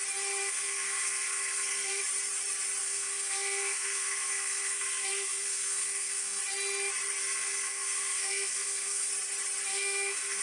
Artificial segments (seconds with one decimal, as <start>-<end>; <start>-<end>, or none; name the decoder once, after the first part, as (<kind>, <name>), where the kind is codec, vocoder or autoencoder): 0.4-2.0 (codec, SNAC); 2.8-6.4; 7.2-9.1; 9.7-10.4